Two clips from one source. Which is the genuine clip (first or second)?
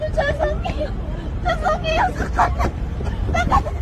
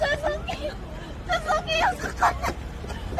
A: second